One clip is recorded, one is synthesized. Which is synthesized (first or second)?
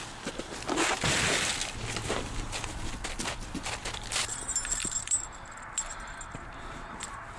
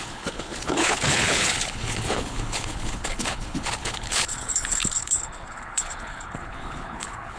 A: second